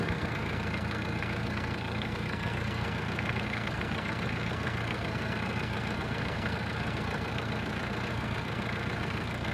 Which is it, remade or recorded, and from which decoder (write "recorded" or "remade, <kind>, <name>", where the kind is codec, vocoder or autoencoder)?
remade, codec, SNAC